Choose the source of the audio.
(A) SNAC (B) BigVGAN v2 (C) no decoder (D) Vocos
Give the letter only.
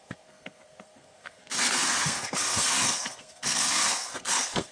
A